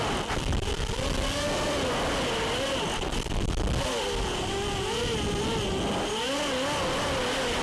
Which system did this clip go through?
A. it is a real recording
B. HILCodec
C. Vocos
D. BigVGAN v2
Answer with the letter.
A